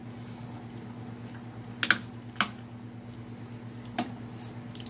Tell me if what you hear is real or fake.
real